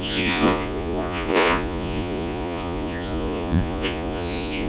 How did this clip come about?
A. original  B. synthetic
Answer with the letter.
B